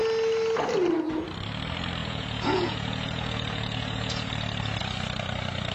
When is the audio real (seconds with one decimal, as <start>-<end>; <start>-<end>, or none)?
0.0-2.0; 4.3-5.7